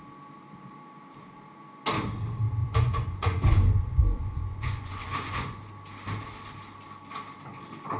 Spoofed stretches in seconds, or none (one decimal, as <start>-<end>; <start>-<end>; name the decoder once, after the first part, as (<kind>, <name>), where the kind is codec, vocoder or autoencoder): 2.6-5.7 (vocoder, Vocos)